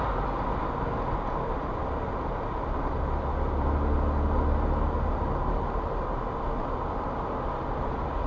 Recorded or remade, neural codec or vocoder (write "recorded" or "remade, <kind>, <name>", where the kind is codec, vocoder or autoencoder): recorded